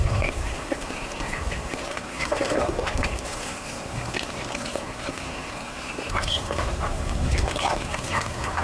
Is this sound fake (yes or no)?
yes